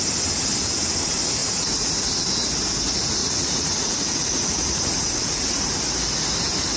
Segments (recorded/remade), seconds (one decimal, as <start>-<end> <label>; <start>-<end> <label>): 0.0-1.4 recorded; 1.4-2.2 remade; 2.2-3.2 recorded; 3.2-5.4 remade; 5.4-6.8 recorded